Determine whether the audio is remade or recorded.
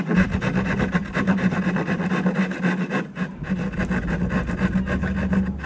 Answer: recorded